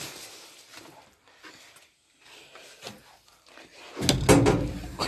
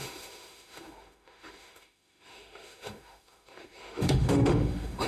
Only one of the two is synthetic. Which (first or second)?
second